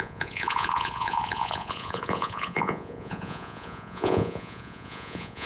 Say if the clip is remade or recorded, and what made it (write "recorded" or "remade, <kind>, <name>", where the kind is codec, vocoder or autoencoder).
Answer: remade, vocoder, Vocos